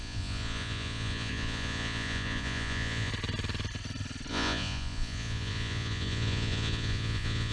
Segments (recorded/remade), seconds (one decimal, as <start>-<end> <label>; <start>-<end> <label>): 0.0-3.1 remade; 3.1-4.3 recorded; 4.3-7.5 remade